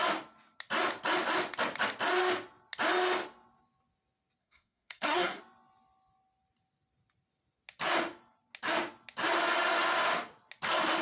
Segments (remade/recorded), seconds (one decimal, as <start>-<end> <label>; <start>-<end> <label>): 0.0-4.4 recorded; 4.4-5.4 remade; 5.4-11.0 recorded